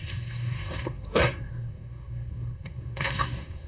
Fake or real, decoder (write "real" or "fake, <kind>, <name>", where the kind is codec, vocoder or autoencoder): fake, codec, SNAC